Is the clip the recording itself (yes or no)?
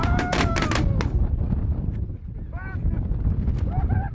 yes